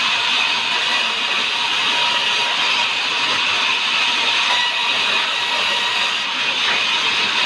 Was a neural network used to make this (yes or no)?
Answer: no